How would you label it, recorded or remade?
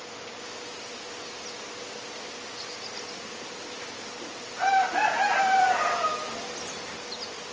recorded